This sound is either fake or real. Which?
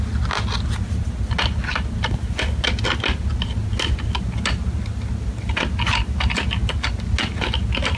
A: real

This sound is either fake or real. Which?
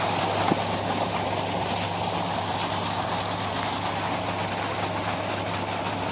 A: real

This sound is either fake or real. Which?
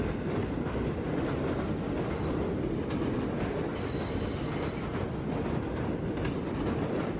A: real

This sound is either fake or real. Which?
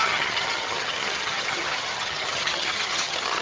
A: fake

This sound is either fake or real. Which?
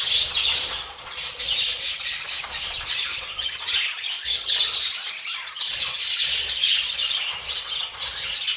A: fake